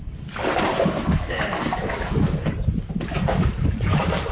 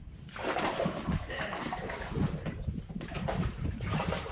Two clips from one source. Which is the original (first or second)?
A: first